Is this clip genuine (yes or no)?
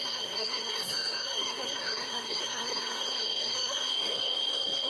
no